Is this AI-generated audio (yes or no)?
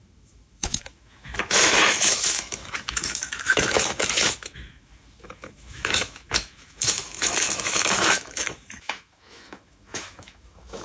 yes